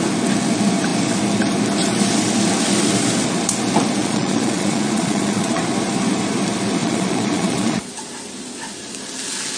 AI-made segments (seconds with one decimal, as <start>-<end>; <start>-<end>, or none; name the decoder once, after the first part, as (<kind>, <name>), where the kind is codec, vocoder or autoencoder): 4.0-5.6 (vocoder, Vocos); 6.8-7.9